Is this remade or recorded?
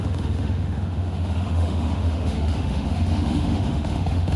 remade